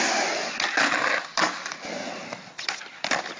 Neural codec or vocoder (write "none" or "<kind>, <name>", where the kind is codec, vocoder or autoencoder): none